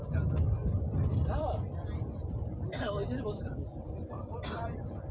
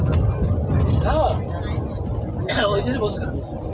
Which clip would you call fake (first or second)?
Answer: first